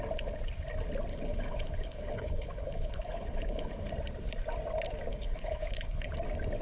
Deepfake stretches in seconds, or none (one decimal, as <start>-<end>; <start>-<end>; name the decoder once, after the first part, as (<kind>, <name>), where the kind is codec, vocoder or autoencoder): 1.1-3.9 (codec, HILCodec); 5.1-6.1